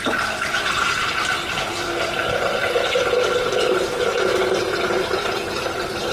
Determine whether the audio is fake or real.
real